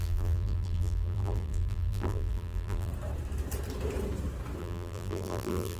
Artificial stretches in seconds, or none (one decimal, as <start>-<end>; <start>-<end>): 0.0-2.9; 4.6-5.8